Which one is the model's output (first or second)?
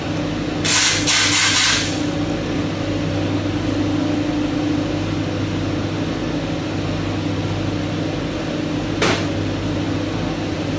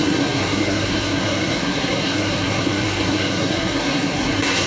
second